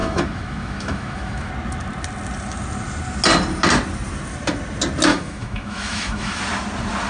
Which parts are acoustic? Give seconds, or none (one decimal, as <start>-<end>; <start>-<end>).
1.5-5.1; 6.4-7.1